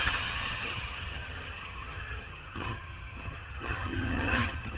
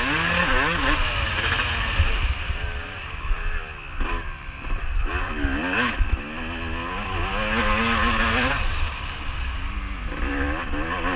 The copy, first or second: first